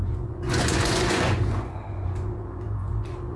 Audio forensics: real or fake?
fake